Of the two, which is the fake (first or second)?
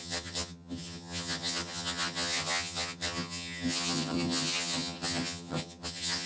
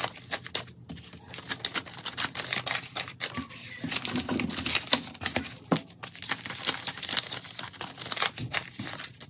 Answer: first